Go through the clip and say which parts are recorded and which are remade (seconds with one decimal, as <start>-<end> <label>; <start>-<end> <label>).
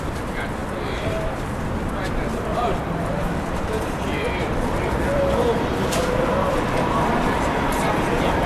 0.0-8.5 remade